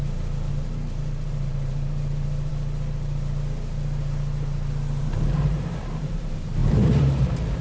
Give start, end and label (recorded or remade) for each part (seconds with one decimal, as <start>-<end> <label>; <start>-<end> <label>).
0.0-0.5 recorded; 0.5-2.5 remade; 2.5-5.0 recorded; 5.0-7.6 remade